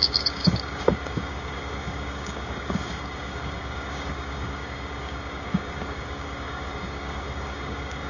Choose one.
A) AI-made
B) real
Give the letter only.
A